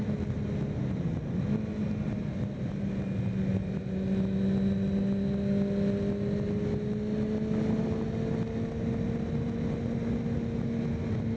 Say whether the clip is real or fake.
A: real